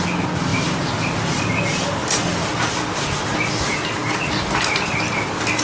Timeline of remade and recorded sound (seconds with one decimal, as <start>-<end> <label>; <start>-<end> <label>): 0.0-0.5 recorded; 0.5-1.6 remade; 1.6-5.6 recorded